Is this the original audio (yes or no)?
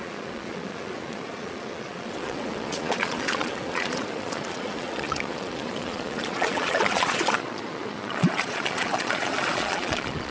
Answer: no